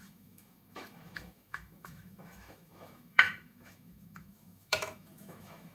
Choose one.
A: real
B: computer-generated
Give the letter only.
B